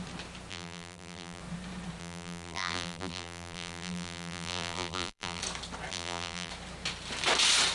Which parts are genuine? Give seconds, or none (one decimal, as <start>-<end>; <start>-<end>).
0.0-0.5; 1.4-2.0; 5.4-5.9; 6.5-7.7